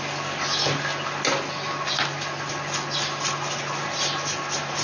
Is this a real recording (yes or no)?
yes